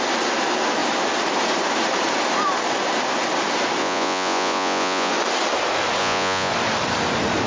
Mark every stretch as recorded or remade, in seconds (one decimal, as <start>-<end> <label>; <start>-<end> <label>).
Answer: 0.0-3.8 recorded; 3.8-5.1 remade; 5.1-6.0 recorded; 6.0-6.5 remade; 6.5-7.5 recorded